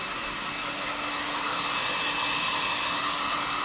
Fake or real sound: real